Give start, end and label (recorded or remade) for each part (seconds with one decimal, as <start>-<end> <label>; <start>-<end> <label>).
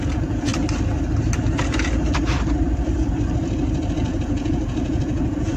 0.0-0.5 remade; 0.5-3.9 recorded; 3.9-5.6 remade